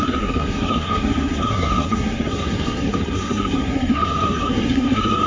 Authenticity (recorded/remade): remade